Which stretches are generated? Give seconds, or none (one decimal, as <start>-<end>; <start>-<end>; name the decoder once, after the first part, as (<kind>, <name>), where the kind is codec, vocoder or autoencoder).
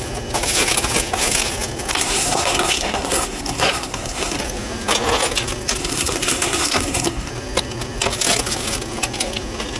1.9-4.4 (codec, SNAC); 5.8-7.3